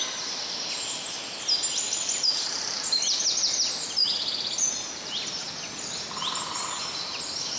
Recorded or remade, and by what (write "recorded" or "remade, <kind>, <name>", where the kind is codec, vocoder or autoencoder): recorded